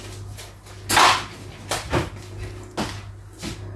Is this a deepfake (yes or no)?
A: no